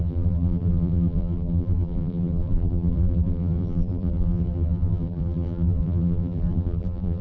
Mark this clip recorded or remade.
remade